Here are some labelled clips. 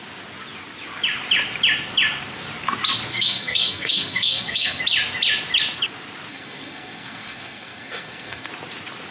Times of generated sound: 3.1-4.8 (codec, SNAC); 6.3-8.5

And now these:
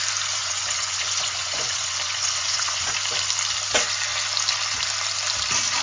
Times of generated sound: 0.4-2.9 (vocoder, Vocos)

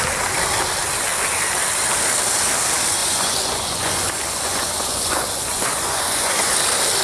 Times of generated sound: 3.0-6.5 (vocoder, Vocos)

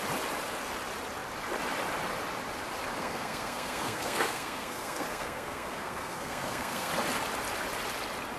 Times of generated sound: 3.0-6.9 (codec, SNAC)

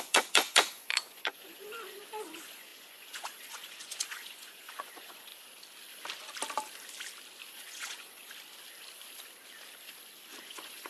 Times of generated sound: 0.0-5.3 (vocoder, Vocos); 7.5-8.2; 10.4-10.9

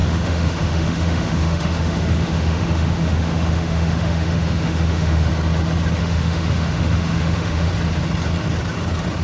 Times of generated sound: 0.0-5.3 (autoencoder, DAC-VAE); 6.0-7.7

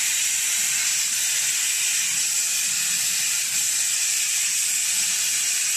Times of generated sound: 2.5-4.5 (vocoder, BigVGAN v2)

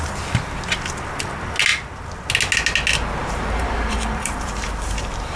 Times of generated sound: 3.2-5.4 (vocoder, BigVGAN v2)